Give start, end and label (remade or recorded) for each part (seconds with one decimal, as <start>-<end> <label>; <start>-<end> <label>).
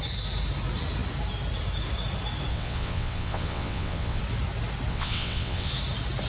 0.0-2.5 recorded; 2.5-4.2 remade; 4.2-4.9 recorded; 4.9-5.7 remade; 5.7-6.3 recorded